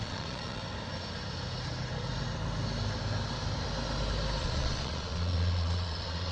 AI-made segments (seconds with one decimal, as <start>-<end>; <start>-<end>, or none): 0.0-0.6; 4.4-6.3